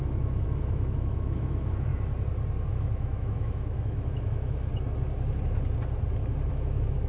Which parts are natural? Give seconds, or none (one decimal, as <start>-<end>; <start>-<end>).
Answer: 1.9-2.7; 4.7-6.5